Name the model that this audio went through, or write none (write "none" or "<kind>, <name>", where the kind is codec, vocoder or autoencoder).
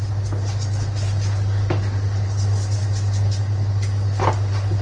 none